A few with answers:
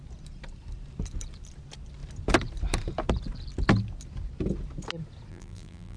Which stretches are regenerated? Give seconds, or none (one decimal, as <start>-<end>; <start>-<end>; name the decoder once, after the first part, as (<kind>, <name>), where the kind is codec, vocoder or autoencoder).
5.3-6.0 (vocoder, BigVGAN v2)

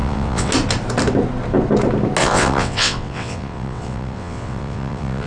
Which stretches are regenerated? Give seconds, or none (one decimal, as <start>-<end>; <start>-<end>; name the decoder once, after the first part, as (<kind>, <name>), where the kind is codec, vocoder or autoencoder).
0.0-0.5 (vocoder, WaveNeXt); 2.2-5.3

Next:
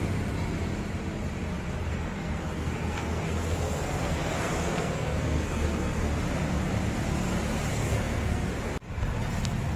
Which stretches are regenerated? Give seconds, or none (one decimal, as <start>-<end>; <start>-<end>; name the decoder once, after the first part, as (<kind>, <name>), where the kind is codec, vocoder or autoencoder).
1.9-6.2 (codec, SNAC); 7.7-8.5

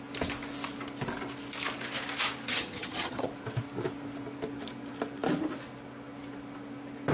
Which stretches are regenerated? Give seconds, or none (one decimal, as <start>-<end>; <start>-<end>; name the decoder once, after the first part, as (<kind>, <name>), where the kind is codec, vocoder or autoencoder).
2.5-3.3 (vocoder, HiFi-GAN)

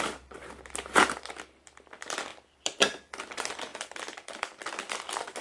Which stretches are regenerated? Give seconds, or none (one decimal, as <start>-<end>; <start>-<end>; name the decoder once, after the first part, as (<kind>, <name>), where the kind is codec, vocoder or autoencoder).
0.0-5.4 (vocoder, BigVGAN v2)

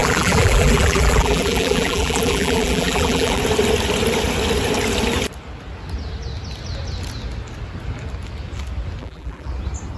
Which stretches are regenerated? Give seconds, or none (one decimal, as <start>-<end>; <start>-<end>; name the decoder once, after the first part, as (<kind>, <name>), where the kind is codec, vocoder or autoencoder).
0.0-3.4 (vocoder, BigVGAN v2); 9.0-9.5